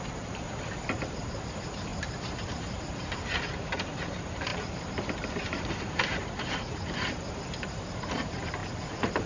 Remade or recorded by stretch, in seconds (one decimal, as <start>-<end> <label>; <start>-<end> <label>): 0.0-1.9 remade; 1.9-2.5 recorded; 2.5-9.3 remade